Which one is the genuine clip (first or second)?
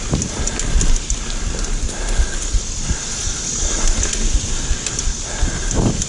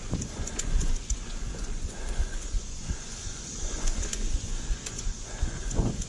first